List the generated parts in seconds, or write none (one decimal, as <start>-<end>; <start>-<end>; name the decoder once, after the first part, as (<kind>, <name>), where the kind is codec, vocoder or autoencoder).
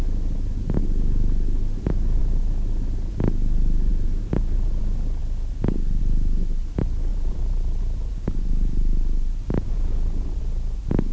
3.9-4.8 (vocoder, BigVGAN v2); 7.1-10.4